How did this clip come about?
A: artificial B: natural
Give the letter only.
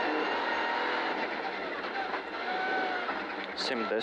B